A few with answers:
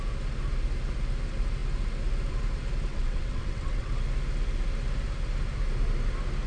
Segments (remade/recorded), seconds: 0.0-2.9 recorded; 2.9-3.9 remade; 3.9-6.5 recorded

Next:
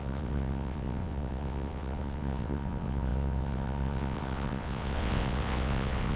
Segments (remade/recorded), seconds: 0.0-6.2 remade

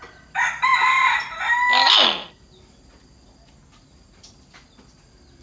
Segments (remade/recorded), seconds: 0.0-5.4 recorded

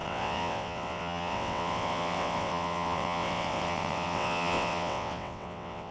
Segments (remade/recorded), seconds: 0.0-5.9 remade

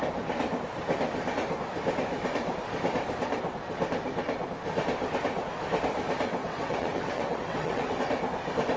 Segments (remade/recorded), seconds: 0.0-6.4 recorded; 6.4-8.0 remade; 8.0-8.8 recorded

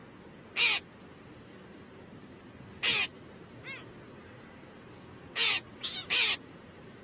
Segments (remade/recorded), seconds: 0.0-7.0 recorded

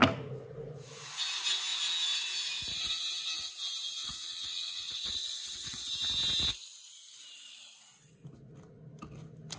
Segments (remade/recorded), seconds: 0.0-4.0 recorded; 4.0-5.9 remade; 5.9-9.6 recorded

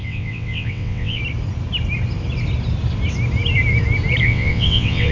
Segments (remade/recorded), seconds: 0.0-1.2 remade; 1.2-4.2 recorded; 4.2-5.1 remade